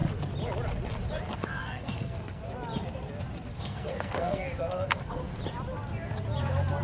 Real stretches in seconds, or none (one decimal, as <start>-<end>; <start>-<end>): 0.0-1.3; 2.4-3.6; 5.3-6.8